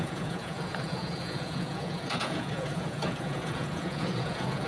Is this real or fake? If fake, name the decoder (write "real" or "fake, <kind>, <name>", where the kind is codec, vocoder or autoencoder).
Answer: fake, vocoder, Vocos